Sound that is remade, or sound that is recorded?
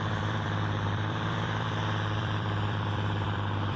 remade